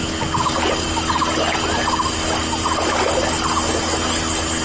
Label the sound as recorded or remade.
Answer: recorded